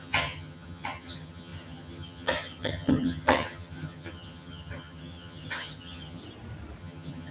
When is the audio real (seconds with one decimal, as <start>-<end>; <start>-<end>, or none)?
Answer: 6.2-6.8